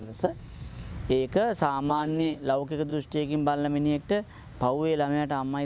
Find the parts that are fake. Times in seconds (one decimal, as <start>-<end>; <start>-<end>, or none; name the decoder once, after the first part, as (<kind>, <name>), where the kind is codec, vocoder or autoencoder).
0.0-0.9 (codec, SNAC); 1.9-2.4